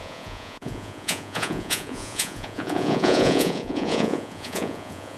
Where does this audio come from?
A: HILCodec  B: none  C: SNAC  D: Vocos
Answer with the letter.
D